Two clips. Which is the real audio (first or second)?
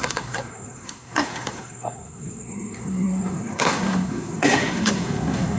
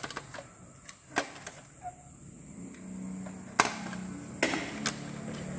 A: second